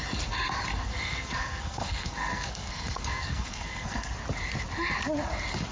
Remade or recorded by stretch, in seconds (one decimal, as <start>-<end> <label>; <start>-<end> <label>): 0.0-0.7 recorded; 0.7-4.1 remade; 4.1-5.7 recorded